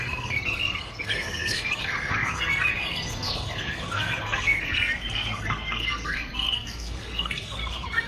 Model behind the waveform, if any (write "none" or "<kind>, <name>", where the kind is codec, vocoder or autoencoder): codec, SNAC